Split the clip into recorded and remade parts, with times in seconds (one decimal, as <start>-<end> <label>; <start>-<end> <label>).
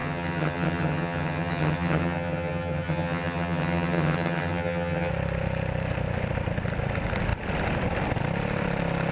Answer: 0.0-5.1 remade; 5.1-9.1 recorded